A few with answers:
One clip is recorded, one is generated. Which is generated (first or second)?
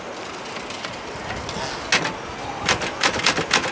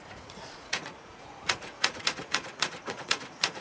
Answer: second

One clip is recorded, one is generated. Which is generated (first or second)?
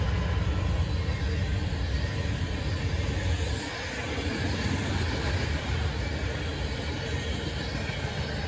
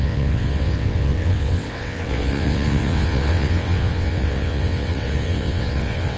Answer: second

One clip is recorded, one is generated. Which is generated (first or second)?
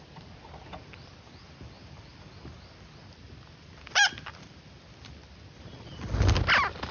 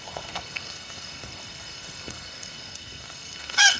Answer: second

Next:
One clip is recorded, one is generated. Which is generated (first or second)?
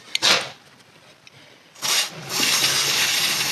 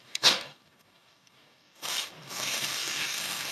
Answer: second